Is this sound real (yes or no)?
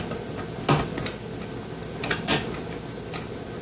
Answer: yes